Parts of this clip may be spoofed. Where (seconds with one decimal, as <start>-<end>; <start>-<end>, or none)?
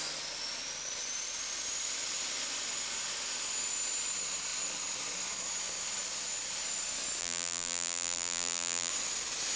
7.2-8.9